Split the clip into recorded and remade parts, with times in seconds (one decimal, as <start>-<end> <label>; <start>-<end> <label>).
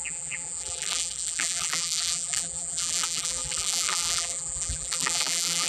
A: 0.0-5.7 remade